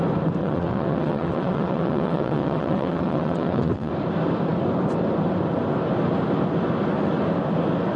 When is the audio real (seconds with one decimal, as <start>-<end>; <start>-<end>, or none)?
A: 0.0-0.4; 3.9-8.0